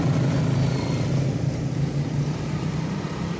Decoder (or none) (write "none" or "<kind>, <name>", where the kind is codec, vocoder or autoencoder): none